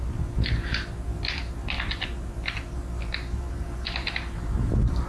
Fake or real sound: fake